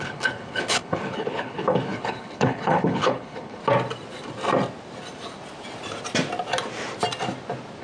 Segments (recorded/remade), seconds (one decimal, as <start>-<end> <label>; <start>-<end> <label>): 0.0-3.6 remade; 3.6-7.8 recorded